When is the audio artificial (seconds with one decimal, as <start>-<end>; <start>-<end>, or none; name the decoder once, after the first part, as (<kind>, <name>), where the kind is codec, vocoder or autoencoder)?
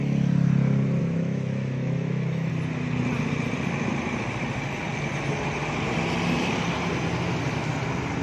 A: 1.0-2.5 (autoencoder, DAC-VAE)